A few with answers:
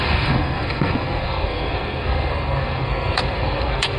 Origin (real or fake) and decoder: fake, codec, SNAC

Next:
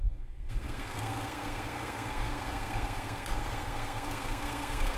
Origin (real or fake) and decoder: fake, codec, SNAC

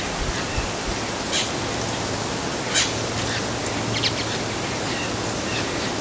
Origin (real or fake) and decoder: real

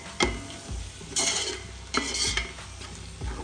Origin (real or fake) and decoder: real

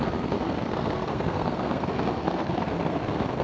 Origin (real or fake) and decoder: fake, codec, SNAC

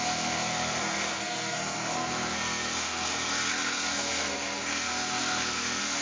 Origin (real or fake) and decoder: fake, codec, SNAC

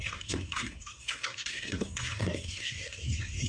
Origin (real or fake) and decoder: fake, codec, SNAC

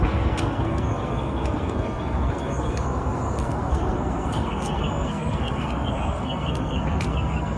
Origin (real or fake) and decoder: fake, codec, SNAC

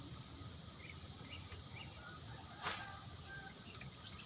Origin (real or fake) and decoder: real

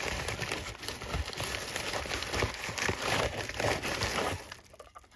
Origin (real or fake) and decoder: real